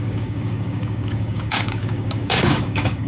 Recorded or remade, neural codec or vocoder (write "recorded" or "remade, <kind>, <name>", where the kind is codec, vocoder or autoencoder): remade, codec, DAC